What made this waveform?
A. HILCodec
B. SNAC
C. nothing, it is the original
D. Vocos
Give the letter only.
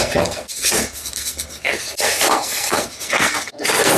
B